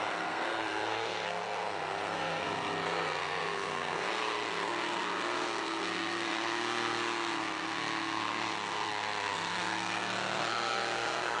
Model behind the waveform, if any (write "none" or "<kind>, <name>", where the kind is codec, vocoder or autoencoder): codec, SNAC